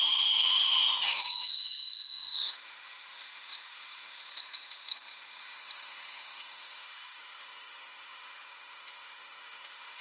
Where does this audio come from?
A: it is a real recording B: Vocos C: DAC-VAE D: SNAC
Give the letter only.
C